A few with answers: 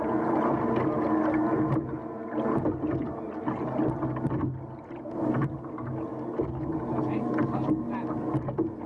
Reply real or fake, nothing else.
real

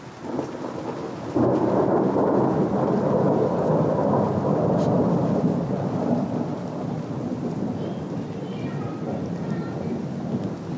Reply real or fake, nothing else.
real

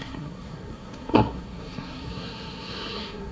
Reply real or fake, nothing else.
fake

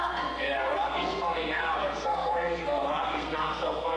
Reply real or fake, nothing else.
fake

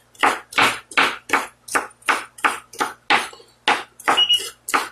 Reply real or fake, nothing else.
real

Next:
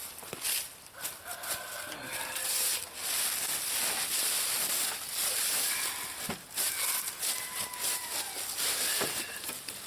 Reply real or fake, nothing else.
real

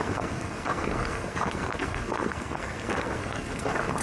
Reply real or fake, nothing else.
fake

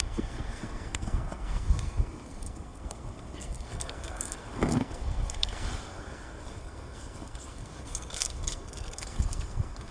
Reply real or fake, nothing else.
fake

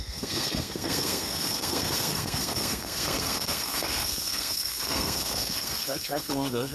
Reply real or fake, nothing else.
fake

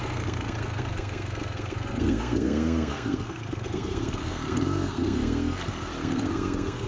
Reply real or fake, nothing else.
fake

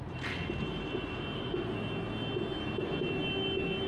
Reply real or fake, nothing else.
real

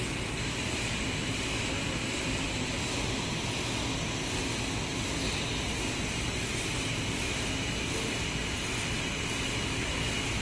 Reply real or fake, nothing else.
real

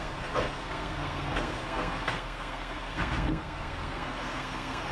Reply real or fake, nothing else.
fake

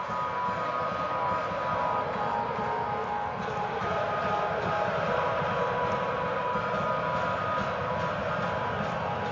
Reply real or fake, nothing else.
real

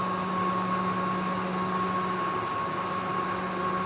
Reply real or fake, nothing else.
real